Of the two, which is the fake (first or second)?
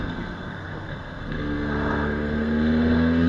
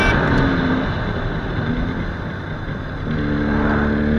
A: first